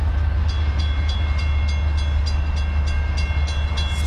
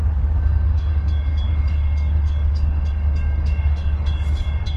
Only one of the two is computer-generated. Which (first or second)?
second